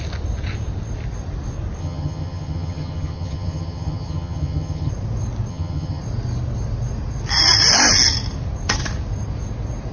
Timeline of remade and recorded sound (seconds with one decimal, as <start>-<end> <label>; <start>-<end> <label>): 0.0-1.8 recorded; 1.8-4.9 remade; 4.9-5.5 recorded; 5.5-6.0 remade; 6.0-9.9 recorded